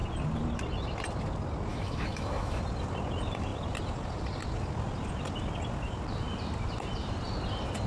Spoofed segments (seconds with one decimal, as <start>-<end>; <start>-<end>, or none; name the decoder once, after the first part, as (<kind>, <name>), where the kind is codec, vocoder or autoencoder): 1.7-2.6 (autoencoder, DAC-VAE)